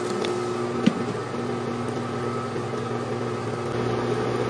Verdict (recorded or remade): recorded